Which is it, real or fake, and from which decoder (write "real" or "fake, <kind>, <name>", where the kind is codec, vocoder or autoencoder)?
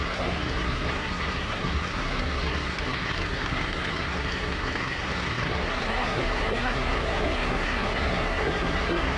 fake, codec, SNAC